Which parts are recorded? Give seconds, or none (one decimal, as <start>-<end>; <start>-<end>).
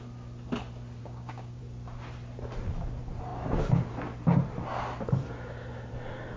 0.0-1.0; 1.6-6.4